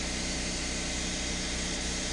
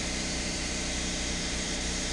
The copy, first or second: second